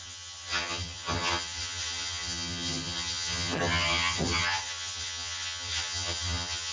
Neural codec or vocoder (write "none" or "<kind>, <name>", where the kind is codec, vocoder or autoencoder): vocoder, HiFi-GAN